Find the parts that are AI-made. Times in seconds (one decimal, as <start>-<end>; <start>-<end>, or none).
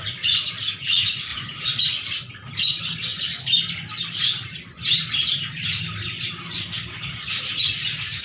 none